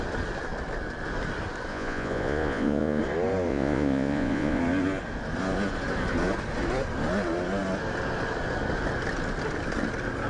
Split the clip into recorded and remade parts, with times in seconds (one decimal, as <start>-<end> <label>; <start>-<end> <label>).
0.0-1.7 recorded; 1.7-3.0 remade; 3.0-3.5 recorded; 3.5-4.6 remade; 4.6-10.3 recorded